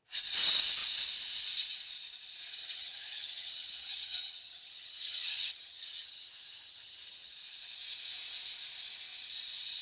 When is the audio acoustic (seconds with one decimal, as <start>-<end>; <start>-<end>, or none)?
0.0-2.6; 7.3-9.8